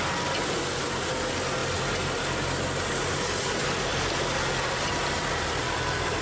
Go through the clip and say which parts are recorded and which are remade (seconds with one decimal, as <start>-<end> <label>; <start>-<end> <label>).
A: 0.0-1.6 recorded; 1.6-2.4 remade; 2.4-6.2 recorded